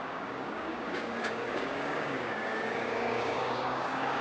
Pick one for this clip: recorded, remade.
remade